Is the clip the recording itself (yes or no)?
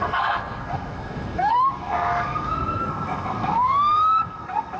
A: no